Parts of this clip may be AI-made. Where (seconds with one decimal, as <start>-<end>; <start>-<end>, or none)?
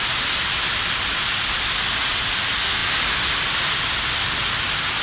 none